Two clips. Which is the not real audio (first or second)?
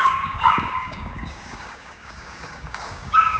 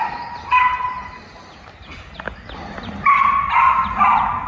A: first